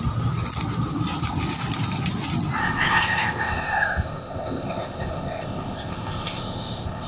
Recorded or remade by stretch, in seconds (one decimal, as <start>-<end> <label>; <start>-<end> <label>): 0.0-2.6 recorded; 2.6-7.1 remade